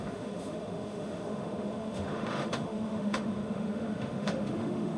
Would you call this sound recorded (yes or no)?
no